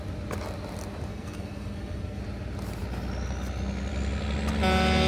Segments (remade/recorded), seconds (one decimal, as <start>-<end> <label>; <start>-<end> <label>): 0.0-1.1 recorded; 1.1-2.2 remade; 2.2-5.1 recorded